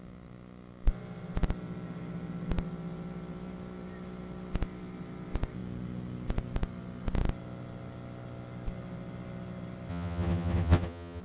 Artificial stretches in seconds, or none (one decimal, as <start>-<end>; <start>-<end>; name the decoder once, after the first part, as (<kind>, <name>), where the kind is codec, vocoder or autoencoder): 9.9-11.2 (vocoder, HiFi-GAN)